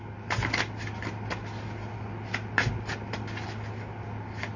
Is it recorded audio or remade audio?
recorded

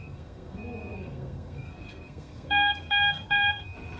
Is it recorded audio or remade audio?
remade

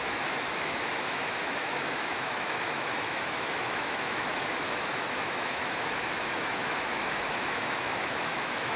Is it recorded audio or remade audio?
remade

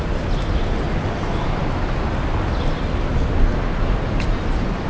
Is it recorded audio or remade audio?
recorded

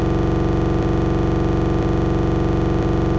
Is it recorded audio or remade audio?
recorded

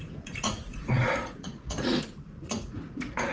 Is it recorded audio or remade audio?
remade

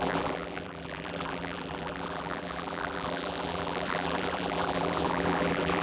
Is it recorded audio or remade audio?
remade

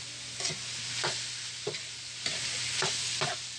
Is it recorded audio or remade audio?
recorded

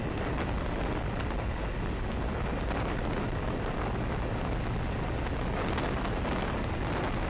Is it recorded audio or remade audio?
recorded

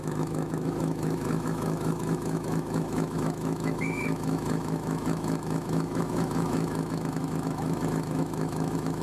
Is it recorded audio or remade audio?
remade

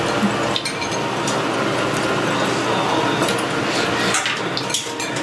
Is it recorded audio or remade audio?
recorded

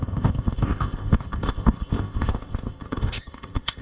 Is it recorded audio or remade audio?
remade